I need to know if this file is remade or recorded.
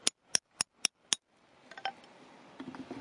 recorded